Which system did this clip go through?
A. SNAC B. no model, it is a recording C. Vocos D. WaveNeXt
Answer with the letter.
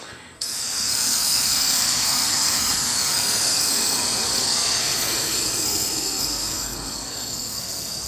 A